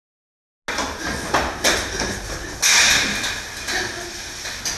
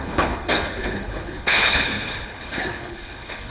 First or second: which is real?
first